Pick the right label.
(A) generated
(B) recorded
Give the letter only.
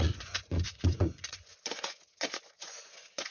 A